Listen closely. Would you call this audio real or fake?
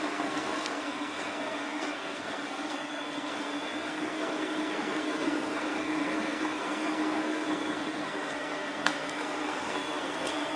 fake